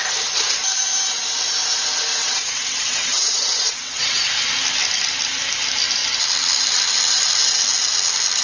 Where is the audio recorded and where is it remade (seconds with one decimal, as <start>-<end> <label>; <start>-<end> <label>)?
0.0-2.2 recorded; 2.2-4.3 remade; 4.3-8.4 recorded